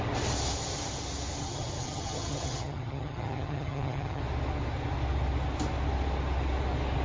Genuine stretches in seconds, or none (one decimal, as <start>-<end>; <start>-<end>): 0.0-1.4; 4.2-7.0